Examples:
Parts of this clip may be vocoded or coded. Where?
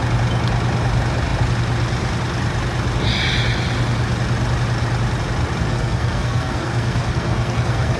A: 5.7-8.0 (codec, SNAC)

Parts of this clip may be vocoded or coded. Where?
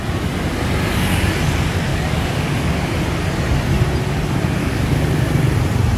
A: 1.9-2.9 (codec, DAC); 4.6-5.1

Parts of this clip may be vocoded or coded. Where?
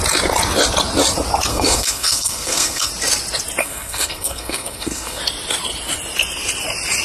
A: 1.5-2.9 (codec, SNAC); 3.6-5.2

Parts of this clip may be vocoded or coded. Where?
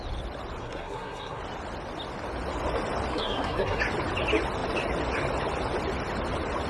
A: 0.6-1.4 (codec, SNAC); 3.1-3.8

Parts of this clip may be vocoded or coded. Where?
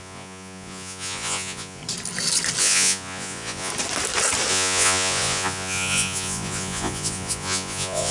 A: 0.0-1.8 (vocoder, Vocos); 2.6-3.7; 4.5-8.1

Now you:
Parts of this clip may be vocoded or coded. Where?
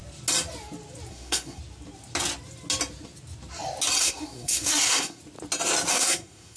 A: 1.1-1.6 (codec, SNAC); 4.0-5.2; 5.9-6.6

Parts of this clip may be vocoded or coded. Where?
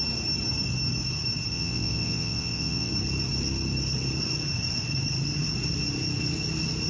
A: 1.5-2.9 (vocoder, WaveNeXt)